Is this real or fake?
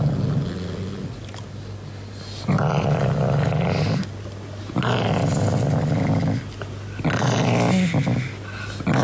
real